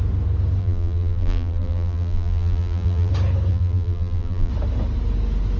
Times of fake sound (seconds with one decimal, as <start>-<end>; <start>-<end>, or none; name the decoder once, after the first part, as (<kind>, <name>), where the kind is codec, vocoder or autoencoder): 0.6-3.1 (vocoder, BigVGAN v2); 3.5-4.5

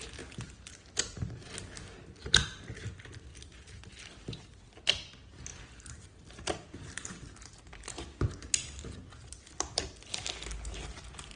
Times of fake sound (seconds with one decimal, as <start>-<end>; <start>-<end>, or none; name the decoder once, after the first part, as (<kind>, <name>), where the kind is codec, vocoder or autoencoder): 3.3-4.5 (vocoder, BigVGAN v2); 5.5-7.6

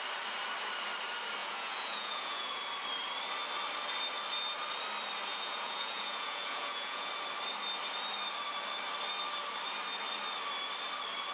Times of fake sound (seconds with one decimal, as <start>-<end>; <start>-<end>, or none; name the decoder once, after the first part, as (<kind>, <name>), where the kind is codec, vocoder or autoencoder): 1.4-2.6 (vocoder, Vocos); 5.3-7.1

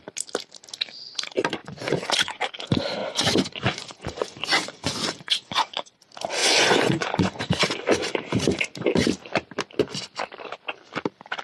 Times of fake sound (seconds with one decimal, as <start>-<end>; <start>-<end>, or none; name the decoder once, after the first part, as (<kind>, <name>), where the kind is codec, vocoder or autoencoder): 1.6-2.5 (vocoder, Vocos); 3.0-6.0; 6.4-7.4

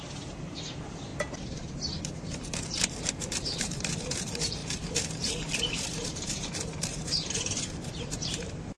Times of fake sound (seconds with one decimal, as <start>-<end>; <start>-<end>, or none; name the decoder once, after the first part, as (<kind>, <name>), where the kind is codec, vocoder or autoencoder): 0.0-1.1 (vocoder, BigVGAN v2); 2.0-8.8

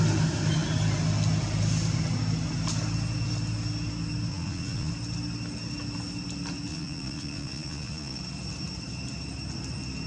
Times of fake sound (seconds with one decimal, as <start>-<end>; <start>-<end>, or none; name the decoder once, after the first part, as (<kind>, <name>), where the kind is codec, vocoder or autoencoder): 4.3-4.9 (vocoder, Vocos); 6.7-8.2